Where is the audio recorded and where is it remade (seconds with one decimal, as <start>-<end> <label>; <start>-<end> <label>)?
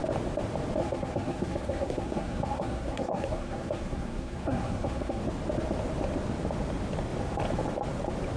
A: 0.0-0.8 recorded; 0.8-5.2 remade; 5.2-8.4 recorded